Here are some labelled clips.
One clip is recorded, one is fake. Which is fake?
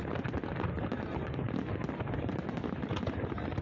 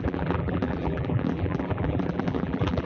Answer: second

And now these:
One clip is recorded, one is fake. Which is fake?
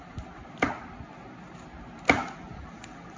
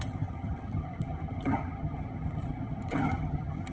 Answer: second